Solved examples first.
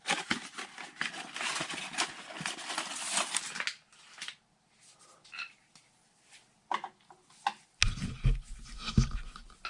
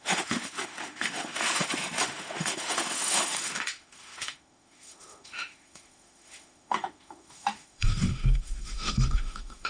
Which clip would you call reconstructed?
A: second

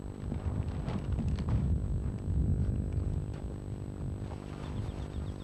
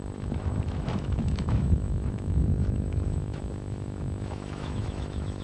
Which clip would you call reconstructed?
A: second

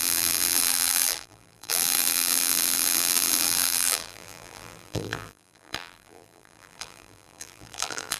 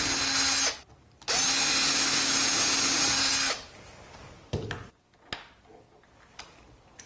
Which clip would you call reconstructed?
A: first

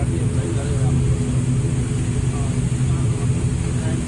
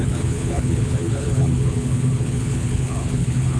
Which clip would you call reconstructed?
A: second